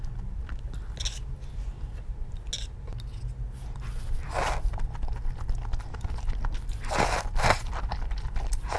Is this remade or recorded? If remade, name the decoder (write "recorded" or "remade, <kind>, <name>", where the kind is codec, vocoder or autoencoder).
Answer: recorded